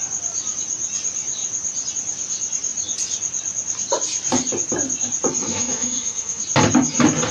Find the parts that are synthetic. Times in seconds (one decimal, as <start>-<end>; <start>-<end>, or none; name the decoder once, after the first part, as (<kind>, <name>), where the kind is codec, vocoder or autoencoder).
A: 5.4-6.4 (autoencoder, DAC-VAE)